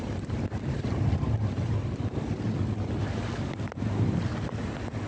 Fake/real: real